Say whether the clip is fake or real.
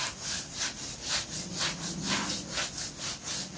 real